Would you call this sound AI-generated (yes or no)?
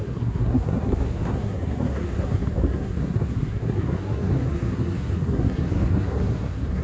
yes